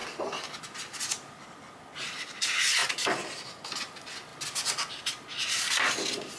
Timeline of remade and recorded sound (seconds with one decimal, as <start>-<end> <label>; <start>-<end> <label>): 0.0-6.4 recorded